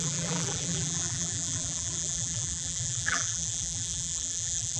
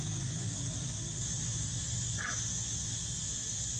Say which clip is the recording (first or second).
second